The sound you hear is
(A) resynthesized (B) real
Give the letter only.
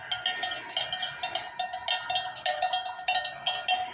B